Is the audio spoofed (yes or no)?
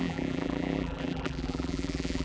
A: yes